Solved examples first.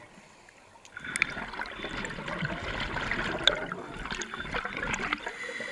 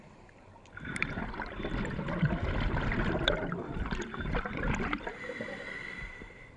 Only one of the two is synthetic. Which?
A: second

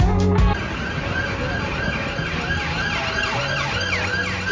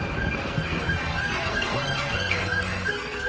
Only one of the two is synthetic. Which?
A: second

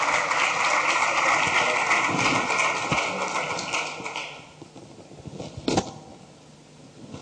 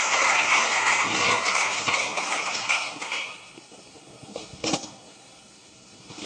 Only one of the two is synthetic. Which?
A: second